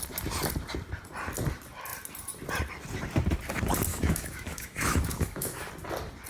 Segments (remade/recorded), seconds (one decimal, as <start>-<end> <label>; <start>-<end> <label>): 0.0-3.9 recorded; 3.9-5.7 remade; 5.7-6.3 recorded